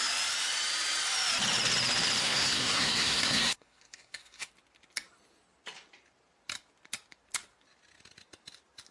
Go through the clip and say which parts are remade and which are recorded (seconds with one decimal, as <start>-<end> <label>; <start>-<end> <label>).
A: 0.0-2.2 recorded; 2.2-4.5 remade; 4.5-8.9 recorded